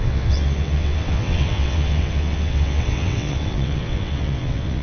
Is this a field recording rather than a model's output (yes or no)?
no